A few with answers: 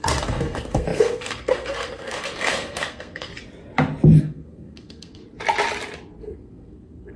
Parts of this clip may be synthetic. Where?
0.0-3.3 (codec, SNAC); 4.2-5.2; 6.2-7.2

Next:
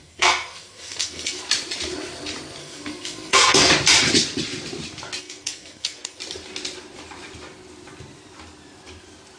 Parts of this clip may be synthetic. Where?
0.0-1.4 (codec, SNAC); 2.6-3.7; 5.2-6.2